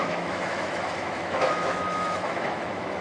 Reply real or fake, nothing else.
fake